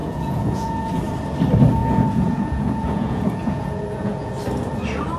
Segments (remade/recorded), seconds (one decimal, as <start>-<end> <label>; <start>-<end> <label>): 0.0-1.0 remade; 1.0-1.8 recorded; 1.8-4.3 remade; 4.3-5.2 recorded